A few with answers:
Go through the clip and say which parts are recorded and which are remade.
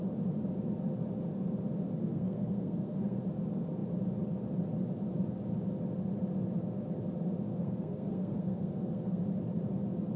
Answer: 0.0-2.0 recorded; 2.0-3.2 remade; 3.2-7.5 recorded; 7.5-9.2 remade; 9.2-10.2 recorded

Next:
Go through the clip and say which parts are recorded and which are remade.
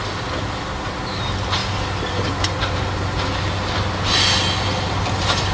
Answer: 0.0-5.5 recorded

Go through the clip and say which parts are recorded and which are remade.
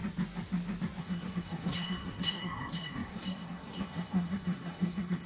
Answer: 0.0-1.0 recorded; 1.0-5.3 remade